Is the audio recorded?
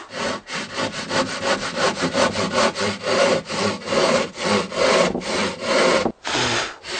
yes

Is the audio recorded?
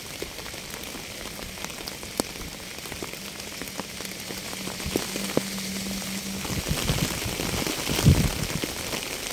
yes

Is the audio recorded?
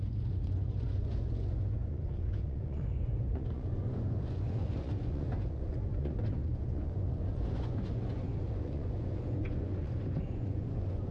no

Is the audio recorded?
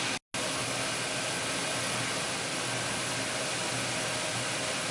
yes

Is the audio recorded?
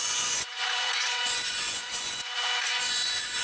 no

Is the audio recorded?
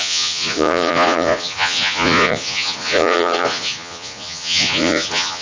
no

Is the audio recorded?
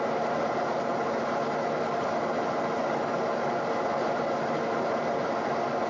yes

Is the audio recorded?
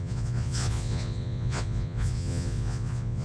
no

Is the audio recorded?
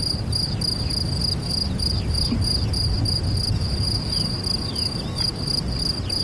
yes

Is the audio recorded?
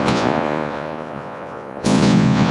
no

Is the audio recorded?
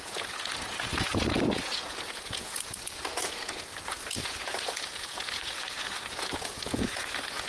no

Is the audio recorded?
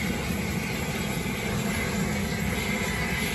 yes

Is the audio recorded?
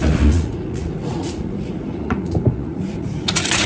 no